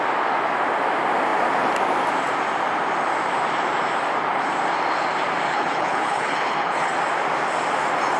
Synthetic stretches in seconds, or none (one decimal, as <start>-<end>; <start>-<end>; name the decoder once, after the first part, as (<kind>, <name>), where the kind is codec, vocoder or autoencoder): 5.5-6.9 (codec, HILCodec)

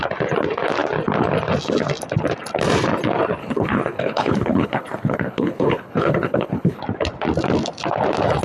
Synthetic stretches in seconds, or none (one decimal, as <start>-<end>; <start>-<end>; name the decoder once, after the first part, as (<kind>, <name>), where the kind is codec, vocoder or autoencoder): 3.4-6.8 (codec, HILCodec)